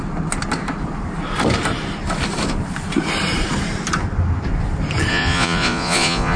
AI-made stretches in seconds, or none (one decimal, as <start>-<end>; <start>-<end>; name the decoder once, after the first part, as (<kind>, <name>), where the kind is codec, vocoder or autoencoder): 5.1-6.4 (vocoder, Vocos)